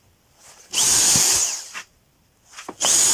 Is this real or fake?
real